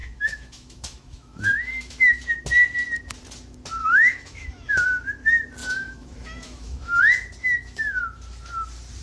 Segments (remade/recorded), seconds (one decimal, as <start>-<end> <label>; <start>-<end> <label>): 0.0-2.2 remade; 2.2-3.8 recorded; 3.8-4.7 remade; 4.7-5.6 recorded; 5.6-7.0 remade; 7.0-7.4 recorded; 7.4-8.0 remade; 8.0-9.0 recorded